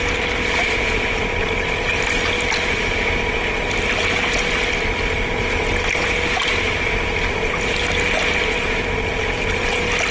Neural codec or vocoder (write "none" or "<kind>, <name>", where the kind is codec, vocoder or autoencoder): none